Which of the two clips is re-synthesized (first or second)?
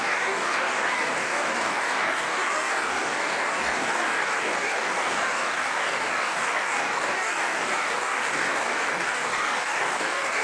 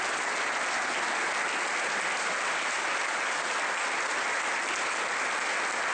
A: first